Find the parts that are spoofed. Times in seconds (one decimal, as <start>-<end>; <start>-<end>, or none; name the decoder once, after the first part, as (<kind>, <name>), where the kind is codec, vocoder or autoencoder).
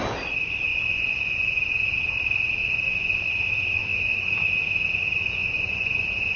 0.7-2.0 (vocoder, Vocos); 2.6-3.2; 3.9-4.5; 5.4-6.4